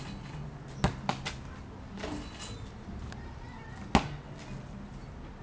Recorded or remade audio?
recorded